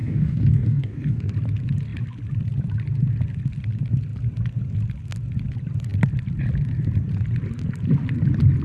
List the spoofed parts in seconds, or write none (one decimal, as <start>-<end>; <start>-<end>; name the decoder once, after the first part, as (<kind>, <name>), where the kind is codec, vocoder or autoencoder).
0.0-1.3 (codec, DAC)